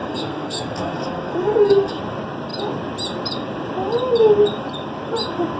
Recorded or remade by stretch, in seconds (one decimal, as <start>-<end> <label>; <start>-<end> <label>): 0.0-2.0 remade; 2.0-5.6 recorded